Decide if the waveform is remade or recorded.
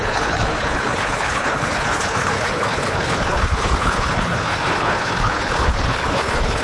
remade